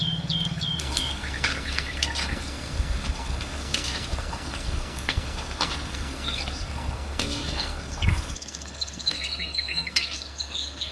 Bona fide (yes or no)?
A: no